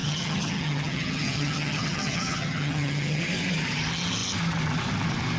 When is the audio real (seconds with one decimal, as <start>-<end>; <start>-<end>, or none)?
3.2-5.4